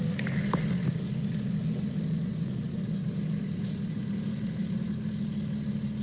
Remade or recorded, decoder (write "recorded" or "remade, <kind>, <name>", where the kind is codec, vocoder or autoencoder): recorded